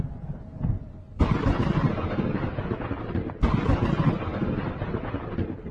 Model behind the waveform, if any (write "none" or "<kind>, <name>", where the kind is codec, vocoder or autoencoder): none